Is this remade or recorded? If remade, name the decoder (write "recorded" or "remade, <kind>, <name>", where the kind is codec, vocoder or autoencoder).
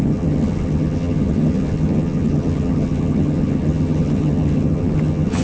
remade, vocoder, HiFi-GAN